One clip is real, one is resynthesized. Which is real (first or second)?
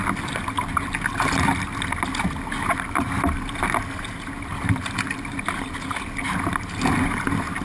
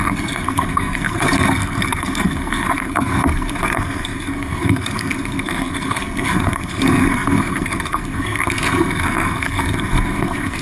first